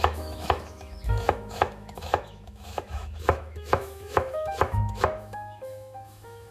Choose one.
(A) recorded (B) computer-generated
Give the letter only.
B